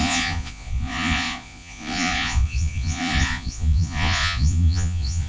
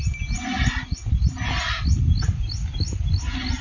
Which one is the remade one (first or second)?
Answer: first